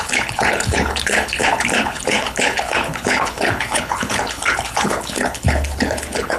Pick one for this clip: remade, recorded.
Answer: remade